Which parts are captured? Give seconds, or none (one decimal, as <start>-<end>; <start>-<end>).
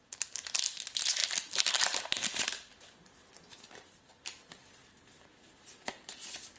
0.0-1.2; 4.2-6.6